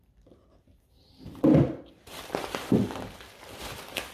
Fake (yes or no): yes